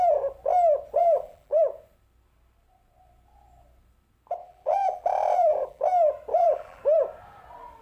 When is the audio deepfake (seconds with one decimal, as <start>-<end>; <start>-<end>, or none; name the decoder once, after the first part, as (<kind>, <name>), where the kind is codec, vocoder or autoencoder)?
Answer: 1.0-1.6 (vocoder, BigVGAN v2); 4.4-5.8; 6.3-6.8